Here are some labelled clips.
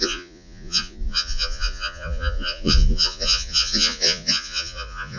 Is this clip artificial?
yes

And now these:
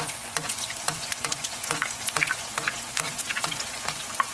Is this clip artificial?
yes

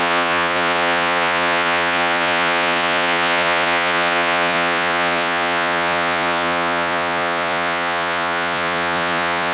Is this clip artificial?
yes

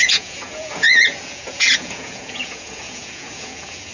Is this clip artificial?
yes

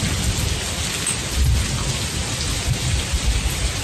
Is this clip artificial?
no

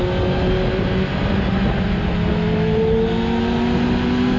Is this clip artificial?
no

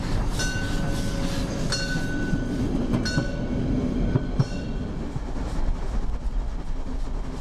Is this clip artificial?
no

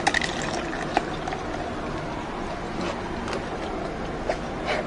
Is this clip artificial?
no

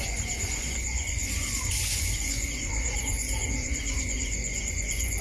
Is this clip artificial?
yes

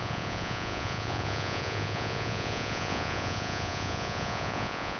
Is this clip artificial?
yes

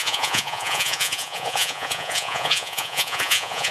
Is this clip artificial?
yes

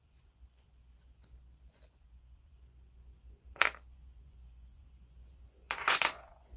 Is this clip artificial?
yes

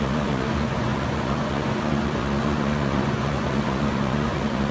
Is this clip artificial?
yes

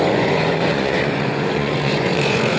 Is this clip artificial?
yes